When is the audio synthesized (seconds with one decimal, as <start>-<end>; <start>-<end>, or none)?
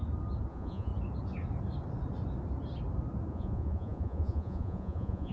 0.5-0.9; 3.3-5.3